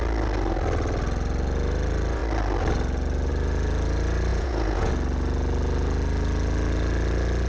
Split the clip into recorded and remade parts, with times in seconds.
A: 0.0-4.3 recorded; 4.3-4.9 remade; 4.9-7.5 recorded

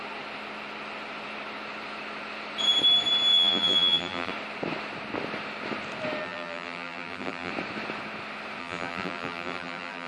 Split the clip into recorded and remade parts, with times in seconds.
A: 0.0-3.3 recorded; 3.3-4.3 remade; 4.3-6.2 recorded; 6.2-7.5 remade; 7.5-8.6 recorded; 8.6-10.1 remade

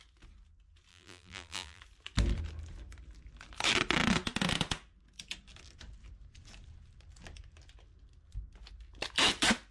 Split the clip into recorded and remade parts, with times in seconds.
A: 0.0-0.9 recorded; 0.9-1.8 remade; 1.8-9.7 recorded

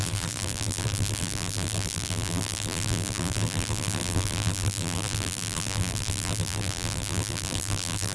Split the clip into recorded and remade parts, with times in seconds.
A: 0.0-8.1 remade

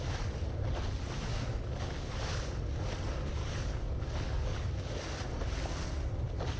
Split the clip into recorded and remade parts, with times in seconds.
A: 0.0-1.3 recorded; 1.3-2.1 remade; 2.1-3.4 recorded; 3.4-4.7 remade; 4.7-6.6 recorded

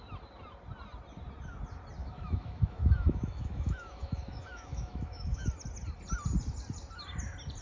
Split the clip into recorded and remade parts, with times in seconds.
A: 0.0-2.0 recorded; 2.0-5.5 remade; 5.5-7.6 recorded